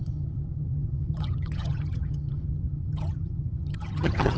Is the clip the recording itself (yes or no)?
no